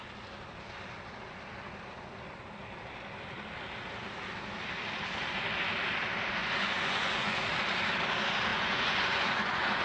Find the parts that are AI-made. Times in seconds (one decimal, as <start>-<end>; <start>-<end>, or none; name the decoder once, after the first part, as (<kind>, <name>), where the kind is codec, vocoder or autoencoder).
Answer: 6.4-7.4 (vocoder, Vocos); 8.5-9.8